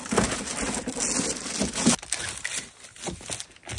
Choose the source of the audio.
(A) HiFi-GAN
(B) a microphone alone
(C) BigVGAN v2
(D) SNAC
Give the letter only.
B